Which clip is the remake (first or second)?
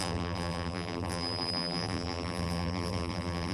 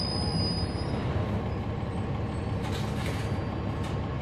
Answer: first